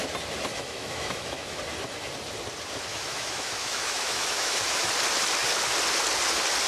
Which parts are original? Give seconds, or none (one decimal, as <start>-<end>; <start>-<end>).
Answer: 0.0-0.5; 1.6-2.9; 4.9-6.7